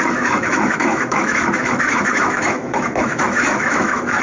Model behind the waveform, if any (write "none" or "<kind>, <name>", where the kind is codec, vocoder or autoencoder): autoencoder, DAC-VAE